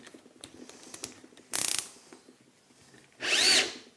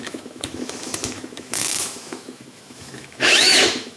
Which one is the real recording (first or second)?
first